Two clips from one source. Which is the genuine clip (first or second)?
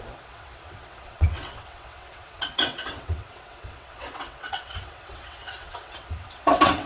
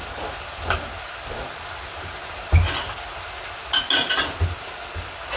second